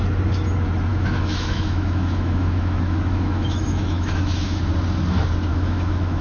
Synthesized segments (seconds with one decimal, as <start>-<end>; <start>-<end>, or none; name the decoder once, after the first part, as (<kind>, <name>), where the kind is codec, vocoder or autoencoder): 0.9-4.6 (autoencoder, DAC-VAE); 5.5-6.2